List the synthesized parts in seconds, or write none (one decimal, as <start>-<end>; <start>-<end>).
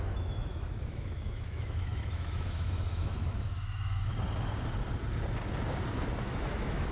0.0-4.1; 6.2-6.9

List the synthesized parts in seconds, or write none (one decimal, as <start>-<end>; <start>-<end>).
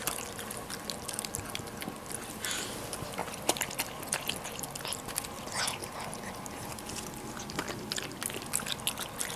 none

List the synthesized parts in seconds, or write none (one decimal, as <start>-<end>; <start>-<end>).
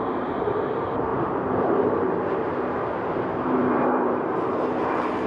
0.0-5.3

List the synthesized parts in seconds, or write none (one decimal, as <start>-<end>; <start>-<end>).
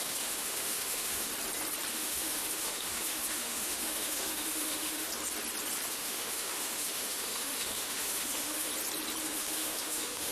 0.0-1.3; 1.9-5.1; 5.9-8.7; 9.2-10.3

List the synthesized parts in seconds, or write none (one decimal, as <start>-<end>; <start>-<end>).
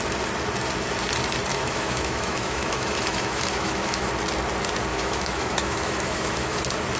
1.5-4.1; 4.9-6.6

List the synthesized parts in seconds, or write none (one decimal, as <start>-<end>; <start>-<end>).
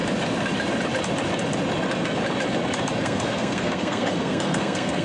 3.0-5.0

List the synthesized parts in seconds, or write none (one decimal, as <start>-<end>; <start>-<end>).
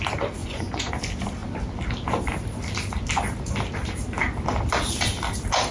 0.4-0.9